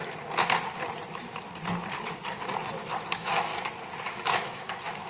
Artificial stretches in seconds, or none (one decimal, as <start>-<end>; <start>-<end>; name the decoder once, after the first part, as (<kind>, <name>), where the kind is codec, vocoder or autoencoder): 3.1-3.5 (autoencoder, DAC-VAE); 4.1-5.1